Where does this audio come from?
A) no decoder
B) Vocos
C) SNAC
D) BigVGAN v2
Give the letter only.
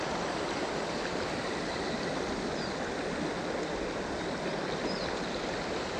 A